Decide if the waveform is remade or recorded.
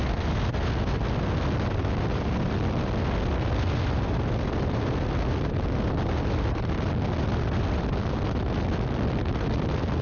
recorded